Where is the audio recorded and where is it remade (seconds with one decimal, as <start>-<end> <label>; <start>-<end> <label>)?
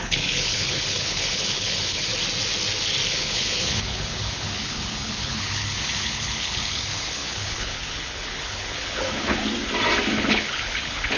0.0-2.1 remade; 2.1-3.1 recorded; 3.1-9.4 remade; 9.4-10.1 recorded; 10.1-11.2 remade